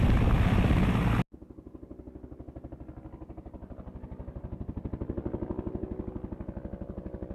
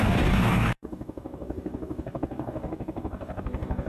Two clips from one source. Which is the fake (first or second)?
second